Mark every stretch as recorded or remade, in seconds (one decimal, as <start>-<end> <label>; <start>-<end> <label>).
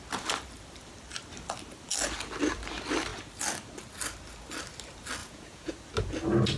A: 0.0-5.2 recorded; 5.2-5.7 remade; 5.7-6.6 recorded